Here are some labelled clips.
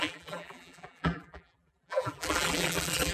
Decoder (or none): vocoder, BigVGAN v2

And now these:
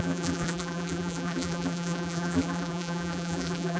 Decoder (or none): vocoder, BigVGAN v2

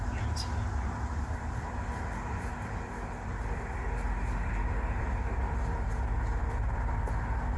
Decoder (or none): vocoder, BigVGAN v2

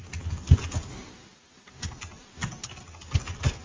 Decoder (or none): none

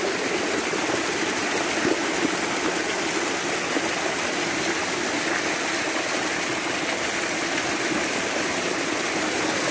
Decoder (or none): none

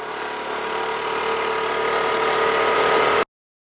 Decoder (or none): none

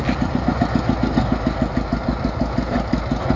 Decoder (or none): none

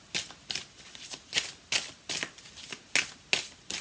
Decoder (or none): none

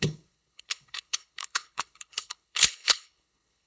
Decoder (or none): codec, HILCodec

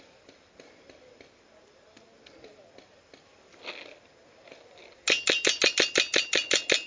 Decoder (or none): none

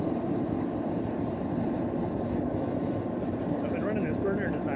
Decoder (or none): none